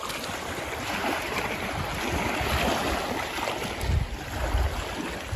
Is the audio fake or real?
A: real